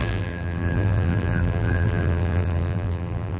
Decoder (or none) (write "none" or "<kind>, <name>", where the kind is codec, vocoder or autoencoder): vocoder, BigVGAN v2